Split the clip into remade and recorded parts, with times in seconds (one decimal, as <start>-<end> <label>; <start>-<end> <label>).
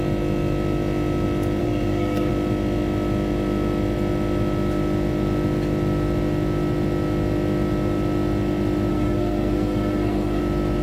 0.0-1.6 recorded; 1.6-2.3 remade; 2.3-8.9 recorded; 8.9-10.4 remade; 10.4-10.8 recorded